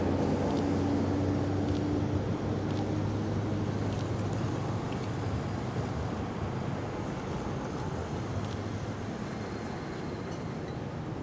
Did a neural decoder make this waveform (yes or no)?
no